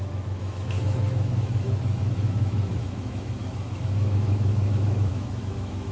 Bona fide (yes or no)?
no